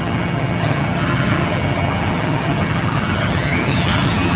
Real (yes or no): no